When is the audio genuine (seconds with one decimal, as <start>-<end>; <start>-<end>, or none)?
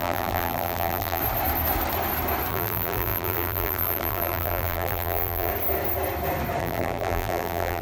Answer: 1.2-2.5; 5.5-6.6